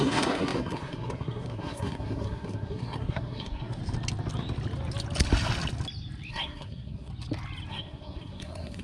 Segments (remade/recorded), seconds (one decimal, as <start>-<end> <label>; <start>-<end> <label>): 0.0-3.8 remade; 3.8-6.3 recorded; 6.3-7.1 remade; 7.1-7.7 recorded; 7.7-8.8 remade